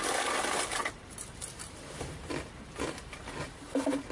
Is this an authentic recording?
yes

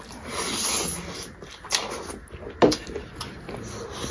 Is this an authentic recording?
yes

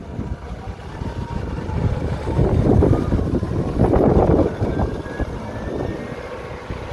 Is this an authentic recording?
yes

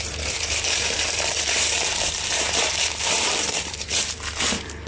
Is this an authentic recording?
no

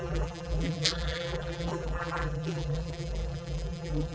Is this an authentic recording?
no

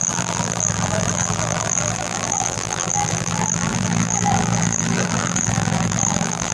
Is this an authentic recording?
no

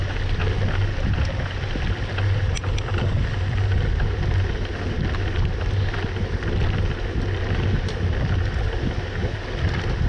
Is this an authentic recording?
yes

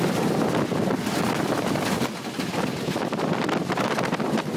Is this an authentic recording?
no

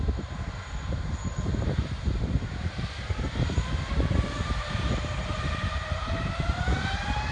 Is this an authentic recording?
no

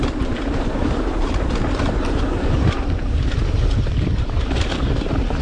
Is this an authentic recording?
no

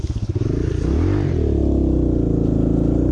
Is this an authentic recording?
yes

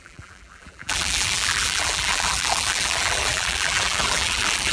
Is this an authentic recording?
no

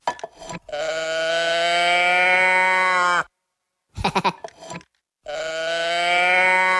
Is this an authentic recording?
yes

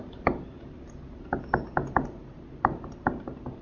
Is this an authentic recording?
no